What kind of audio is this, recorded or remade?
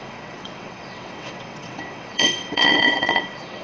remade